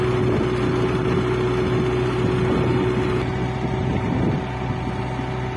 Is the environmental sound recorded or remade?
recorded